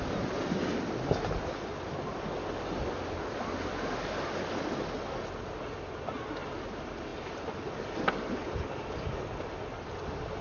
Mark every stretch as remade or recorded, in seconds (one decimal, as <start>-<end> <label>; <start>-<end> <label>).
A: 0.0-10.4 recorded